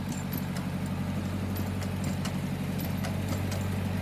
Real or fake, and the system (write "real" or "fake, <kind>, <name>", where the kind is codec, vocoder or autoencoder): real